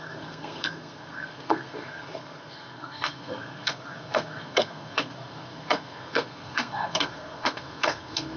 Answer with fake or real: fake